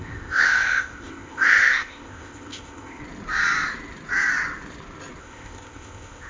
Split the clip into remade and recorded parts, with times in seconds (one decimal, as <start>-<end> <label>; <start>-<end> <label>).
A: 0.0-3.0 remade; 3.0-5.2 recorded; 5.2-6.3 remade